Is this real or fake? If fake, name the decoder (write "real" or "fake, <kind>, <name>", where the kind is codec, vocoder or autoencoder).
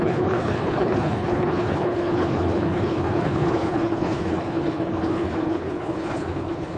fake, codec, HILCodec